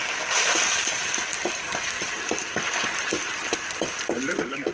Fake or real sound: real